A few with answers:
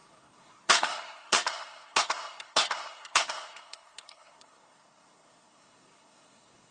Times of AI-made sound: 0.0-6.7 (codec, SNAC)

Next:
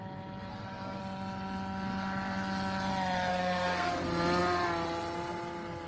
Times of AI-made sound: 0.5-1.0 (codec, SNAC); 3.3-3.9

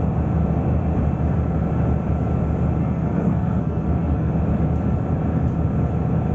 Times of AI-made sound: 2.8-4.3 (codec, SNAC)